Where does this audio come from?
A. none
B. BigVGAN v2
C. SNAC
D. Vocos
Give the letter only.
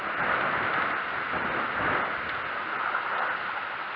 A